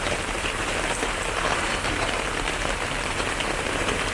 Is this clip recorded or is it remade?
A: remade